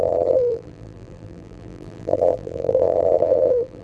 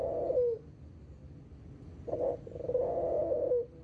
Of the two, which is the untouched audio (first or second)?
second